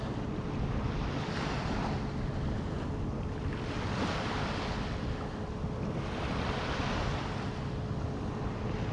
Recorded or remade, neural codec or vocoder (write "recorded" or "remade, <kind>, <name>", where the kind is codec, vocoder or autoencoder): recorded